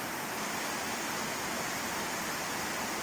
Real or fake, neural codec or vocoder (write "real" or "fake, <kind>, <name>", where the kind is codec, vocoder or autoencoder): real